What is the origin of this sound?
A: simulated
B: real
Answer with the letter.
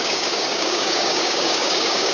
A